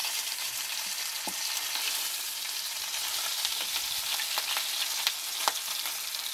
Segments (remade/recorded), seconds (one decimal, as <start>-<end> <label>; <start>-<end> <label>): 0.0-1.0 remade; 1.0-3.3 recorded; 3.3-4.2 remade; 4.2-6.3 recorded